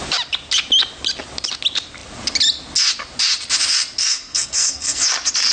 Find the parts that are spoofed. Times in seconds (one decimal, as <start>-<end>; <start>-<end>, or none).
4.0-5.0